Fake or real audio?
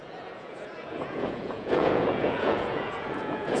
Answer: fake